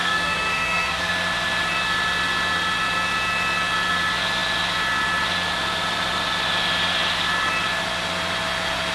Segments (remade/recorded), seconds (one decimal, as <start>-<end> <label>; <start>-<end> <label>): 0.0-1.1 remade; 1.1-8.9 recorded